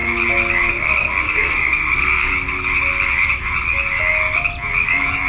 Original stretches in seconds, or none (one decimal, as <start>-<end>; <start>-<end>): 0.0-0.7; 2.3-5.3